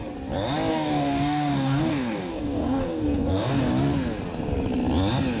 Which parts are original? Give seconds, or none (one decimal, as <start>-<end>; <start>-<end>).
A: 0.0-0.7; 3.6-5.4